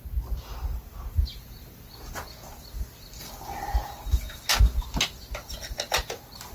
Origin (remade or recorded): recorded